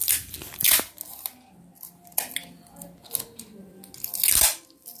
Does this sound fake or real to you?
real